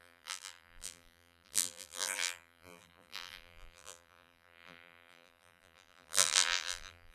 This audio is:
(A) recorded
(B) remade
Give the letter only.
B